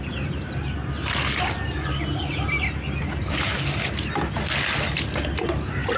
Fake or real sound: real